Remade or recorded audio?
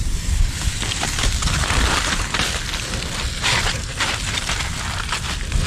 remade